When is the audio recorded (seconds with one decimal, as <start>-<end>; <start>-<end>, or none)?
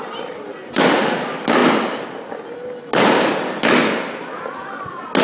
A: 0.0-5.2